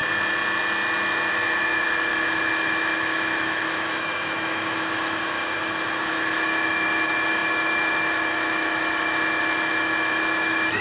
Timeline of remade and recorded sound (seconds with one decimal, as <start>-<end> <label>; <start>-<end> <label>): 0.0-1.3 recorded; 1.3-10.8 remade